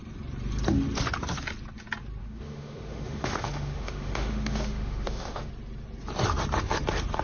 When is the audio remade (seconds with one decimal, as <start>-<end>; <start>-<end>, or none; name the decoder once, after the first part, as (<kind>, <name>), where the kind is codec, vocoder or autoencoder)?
2.2-5.5 (autoencoder, DAC-VAE)